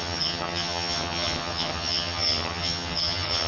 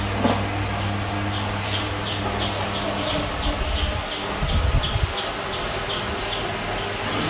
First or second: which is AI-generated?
first